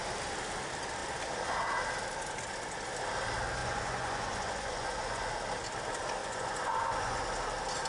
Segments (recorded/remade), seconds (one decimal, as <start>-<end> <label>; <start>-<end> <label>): 0.0-3.6 recorded; 3.6-5.3 remade; 5.3-6.2 recorded; 6.2-7.2 remade; 7.2-7.9 recorded